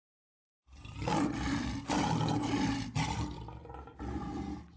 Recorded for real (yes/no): yes